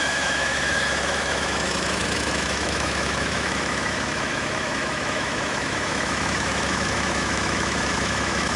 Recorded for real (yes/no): no